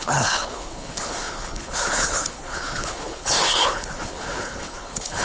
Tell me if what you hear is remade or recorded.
remade